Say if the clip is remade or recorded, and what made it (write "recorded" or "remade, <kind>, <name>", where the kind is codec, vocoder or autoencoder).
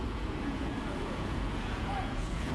remade, vocoder, Vocos